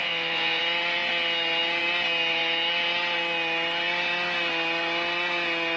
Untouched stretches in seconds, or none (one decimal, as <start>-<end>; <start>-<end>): 0.6-5.8

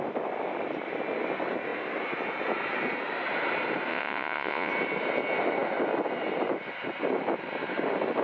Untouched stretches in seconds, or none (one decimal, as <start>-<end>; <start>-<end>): 0.0-3.9; 4.7-8.2

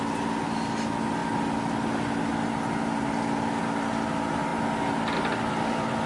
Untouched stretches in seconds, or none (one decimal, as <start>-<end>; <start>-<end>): 0.0-6.1

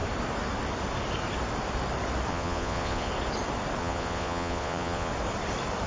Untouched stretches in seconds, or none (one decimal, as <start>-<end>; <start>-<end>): 0.0-2.3; 3.1-3.8; 5.1-5.9

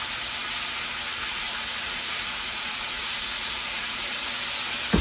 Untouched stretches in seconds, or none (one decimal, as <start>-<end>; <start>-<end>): 0.0-1.3; 4.3-5.0

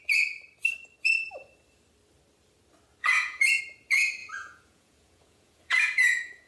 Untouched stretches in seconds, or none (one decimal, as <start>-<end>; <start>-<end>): 0.0-3.0; 3.6-4.2

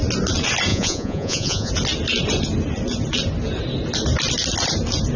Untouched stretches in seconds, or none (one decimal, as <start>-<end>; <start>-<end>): 0.0-0.7; 1.7-5.2

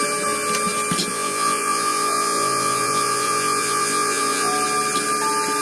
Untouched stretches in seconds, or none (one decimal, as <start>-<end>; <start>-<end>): 0.0-1.1; 4.5-5.6